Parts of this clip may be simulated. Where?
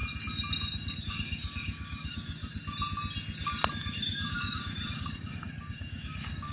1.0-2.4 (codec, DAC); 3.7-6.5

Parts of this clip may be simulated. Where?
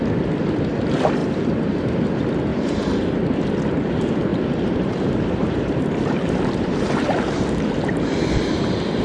1.2-2.0 (vocoder, BigVGAN v2); 2.5-3.0; 4.3-7.4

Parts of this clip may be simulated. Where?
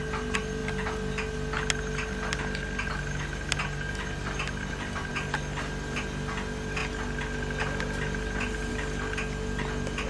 none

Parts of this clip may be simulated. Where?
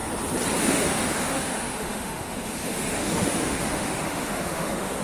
0.6-5.0 (autoencoder, DAC-VAE)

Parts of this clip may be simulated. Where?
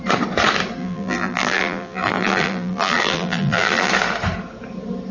0.8-3.9 (vocoder, BigVGAN v2)